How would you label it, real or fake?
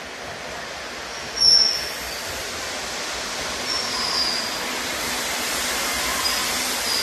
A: real